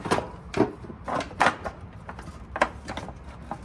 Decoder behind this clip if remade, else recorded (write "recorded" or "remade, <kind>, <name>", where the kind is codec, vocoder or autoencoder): recorded